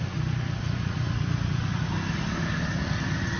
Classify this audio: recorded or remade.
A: recorded